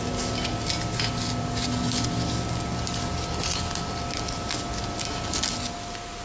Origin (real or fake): real